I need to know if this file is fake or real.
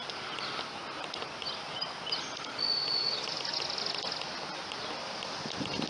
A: real